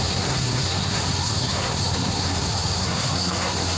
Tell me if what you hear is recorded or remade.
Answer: remade